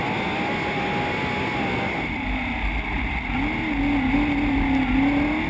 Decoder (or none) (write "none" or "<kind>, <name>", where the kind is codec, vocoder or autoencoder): none